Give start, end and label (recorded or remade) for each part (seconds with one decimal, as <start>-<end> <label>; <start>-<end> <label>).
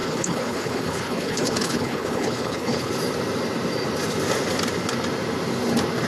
0.0-2.9 remade; 2.9-6.1 recorded